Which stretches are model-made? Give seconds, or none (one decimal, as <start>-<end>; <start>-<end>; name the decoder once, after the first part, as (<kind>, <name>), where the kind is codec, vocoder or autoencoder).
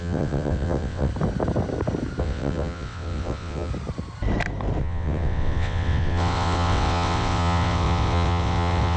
0.0-1.1 (vocoder, WaveNeXt); 2.2-3.7; 4.8-9.0